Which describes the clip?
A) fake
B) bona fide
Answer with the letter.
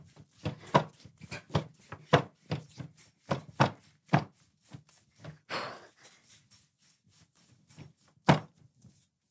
B